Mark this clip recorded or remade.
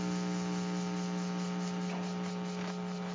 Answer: recorded